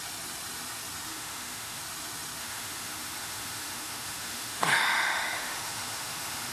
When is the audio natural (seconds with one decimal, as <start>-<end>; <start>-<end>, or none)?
0.0-1.1; 1.8-2.4